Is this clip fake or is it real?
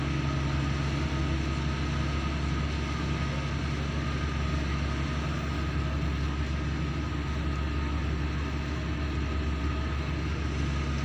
real